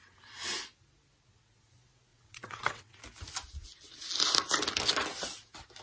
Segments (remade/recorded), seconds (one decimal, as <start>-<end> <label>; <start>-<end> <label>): 0.0-2.1 recorded; 2.1-3.0 remade; 3.0-5.8 recorded